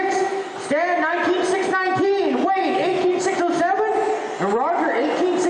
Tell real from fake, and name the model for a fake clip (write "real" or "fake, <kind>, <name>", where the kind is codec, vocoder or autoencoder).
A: real